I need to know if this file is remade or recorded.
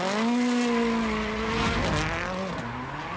recorded